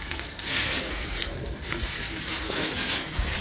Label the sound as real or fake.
fake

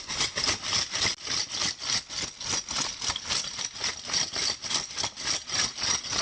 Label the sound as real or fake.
real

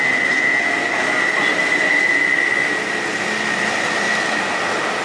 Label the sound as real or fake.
real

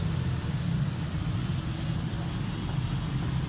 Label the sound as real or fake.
real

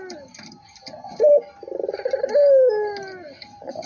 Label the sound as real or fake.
real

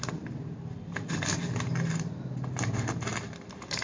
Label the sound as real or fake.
real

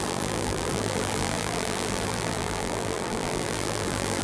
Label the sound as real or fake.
fake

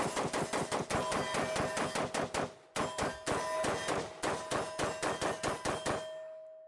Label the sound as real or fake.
real